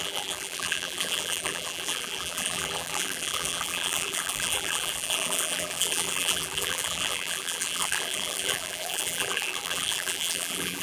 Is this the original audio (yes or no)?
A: no